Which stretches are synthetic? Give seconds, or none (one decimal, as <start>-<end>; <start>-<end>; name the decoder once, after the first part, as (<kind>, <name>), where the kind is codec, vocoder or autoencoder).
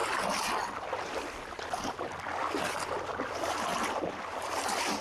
none